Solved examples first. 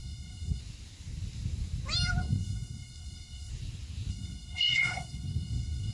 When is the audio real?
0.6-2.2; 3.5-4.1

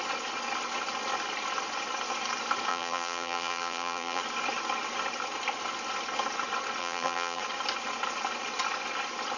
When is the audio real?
0.0-2.7; 4.2-6.8; 7.4-9.4

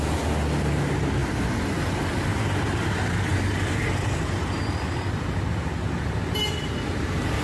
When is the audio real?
0.0-1.2; 1.9-2.3; 2.9-3.3; 4.7-7.4

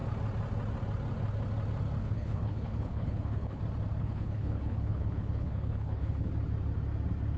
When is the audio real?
0.0-2.0; 3.6-4.0; 6.3-7.4